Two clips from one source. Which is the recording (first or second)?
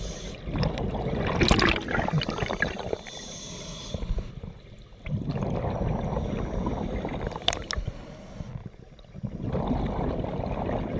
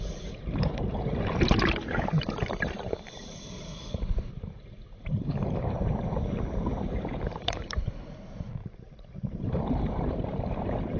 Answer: first